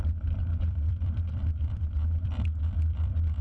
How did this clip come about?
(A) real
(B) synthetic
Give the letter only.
B